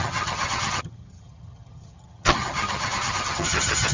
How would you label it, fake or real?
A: fake